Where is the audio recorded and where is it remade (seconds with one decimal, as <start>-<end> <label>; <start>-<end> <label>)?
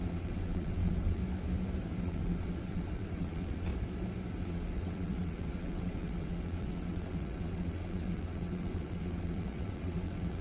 0.0-1.2 remade; 1.2-2.0 recorded; 2.0-3.7 remade; 3.7-4.4 recorded; 4.4-10.4 remade